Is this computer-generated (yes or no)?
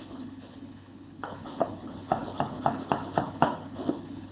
yes